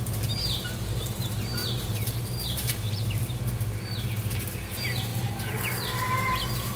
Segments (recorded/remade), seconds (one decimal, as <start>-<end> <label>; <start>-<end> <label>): 0.0-1.6 recorded; 1.6-3.4 remade; 3.4-6.8 recorded